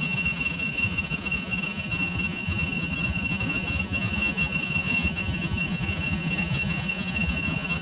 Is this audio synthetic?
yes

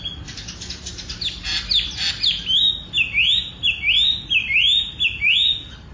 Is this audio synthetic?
no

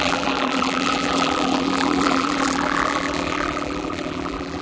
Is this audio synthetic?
yes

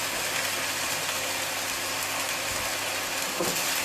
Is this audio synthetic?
no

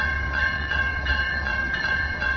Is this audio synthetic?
yes